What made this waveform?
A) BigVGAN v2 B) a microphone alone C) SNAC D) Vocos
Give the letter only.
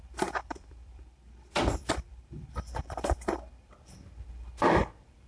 A